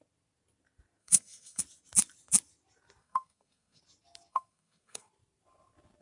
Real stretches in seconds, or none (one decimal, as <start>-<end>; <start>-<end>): 0.0-1.0; 1.6-3.0; 3.8-4.3; 5.1-6.0